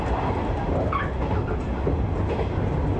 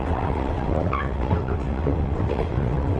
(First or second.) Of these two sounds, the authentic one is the first